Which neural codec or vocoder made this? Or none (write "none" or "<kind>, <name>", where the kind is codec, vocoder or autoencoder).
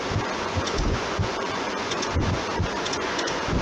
vocoder, Vocos